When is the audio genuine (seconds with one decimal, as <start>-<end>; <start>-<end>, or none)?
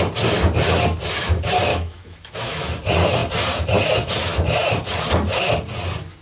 0.0-1.7; 2.6-6.2